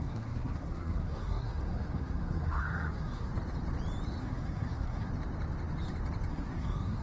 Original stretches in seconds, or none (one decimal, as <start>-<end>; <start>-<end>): 3.3-4.2; 5.1-6.3